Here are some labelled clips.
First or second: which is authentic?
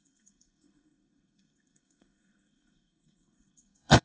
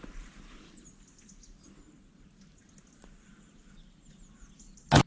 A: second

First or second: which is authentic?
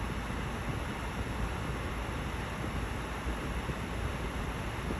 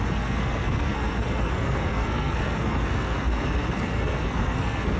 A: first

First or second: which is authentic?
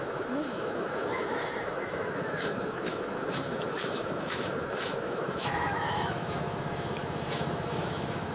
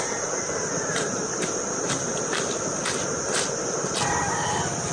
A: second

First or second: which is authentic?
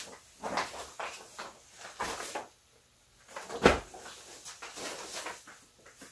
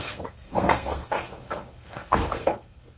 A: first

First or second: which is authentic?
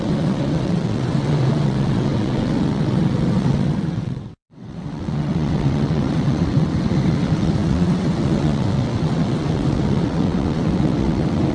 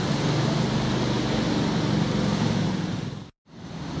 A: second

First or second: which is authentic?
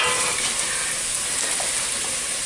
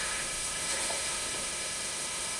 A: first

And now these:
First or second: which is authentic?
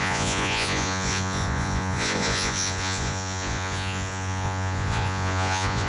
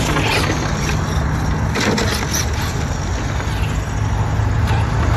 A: second